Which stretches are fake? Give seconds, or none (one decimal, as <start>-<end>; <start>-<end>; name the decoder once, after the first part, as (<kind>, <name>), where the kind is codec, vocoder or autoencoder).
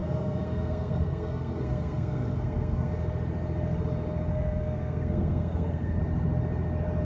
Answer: 0.0-2.9 (codec, SNAC); 4.3-6.0